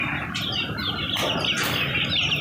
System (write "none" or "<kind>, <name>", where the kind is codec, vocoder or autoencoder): vocoder, BigVGAN v2